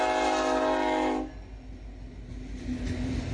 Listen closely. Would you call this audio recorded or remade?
recorded